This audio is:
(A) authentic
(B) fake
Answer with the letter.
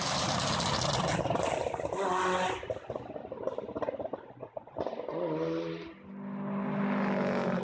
A